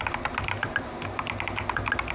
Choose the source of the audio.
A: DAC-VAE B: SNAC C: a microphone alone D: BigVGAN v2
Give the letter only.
C